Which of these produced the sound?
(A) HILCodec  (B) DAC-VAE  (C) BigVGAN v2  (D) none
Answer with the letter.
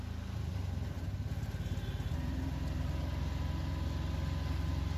D